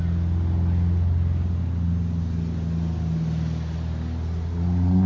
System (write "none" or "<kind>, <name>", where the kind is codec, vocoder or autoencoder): none